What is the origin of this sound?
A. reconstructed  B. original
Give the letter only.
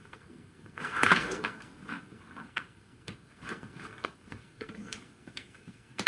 A